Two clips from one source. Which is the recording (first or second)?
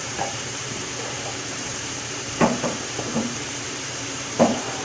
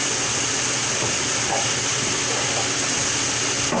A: second